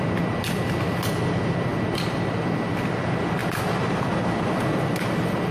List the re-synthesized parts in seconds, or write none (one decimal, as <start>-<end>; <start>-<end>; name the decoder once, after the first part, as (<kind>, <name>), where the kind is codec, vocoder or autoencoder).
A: 3.4-4.0 (vocoder, BigVGAN v2)